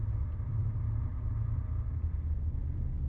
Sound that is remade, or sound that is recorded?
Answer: recorded